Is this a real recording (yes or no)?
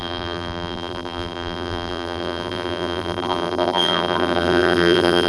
no